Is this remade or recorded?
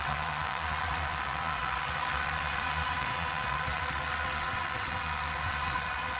remade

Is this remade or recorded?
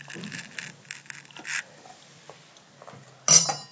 recorded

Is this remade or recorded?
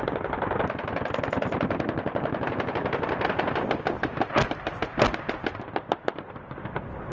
recorded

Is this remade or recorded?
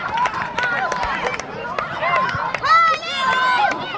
recorded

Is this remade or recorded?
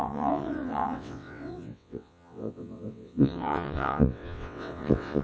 remade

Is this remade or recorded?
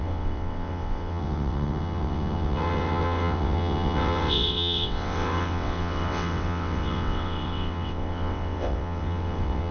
remade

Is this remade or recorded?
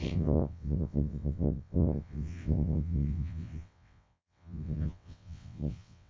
remade